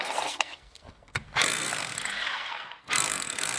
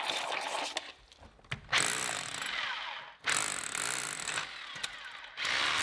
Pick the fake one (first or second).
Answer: first